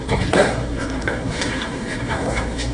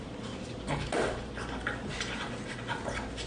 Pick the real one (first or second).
second